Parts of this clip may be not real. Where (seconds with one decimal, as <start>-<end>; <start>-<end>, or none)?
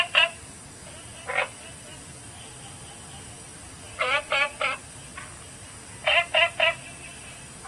3.5-4.3